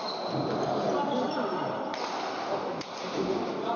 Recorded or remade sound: recorded